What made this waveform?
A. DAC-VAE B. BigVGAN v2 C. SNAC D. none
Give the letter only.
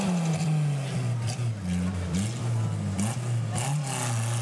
D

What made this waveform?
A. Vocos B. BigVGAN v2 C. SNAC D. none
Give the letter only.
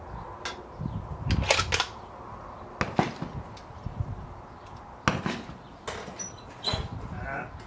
D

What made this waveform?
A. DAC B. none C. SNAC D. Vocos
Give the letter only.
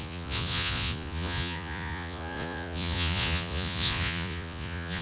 D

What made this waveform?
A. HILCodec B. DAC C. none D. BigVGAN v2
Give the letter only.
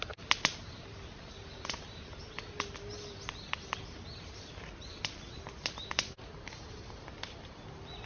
C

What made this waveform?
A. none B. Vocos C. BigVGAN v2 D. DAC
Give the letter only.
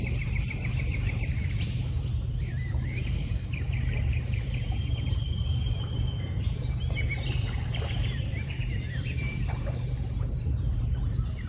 C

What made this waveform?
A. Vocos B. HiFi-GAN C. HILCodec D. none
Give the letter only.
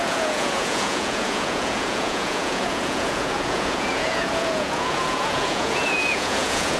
A